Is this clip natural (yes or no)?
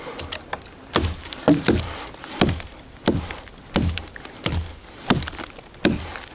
yes